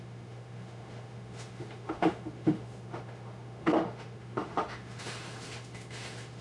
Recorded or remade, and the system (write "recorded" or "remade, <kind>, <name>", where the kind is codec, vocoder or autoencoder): remade, autoencoder, DAC-VAE